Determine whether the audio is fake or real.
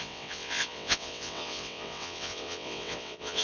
fake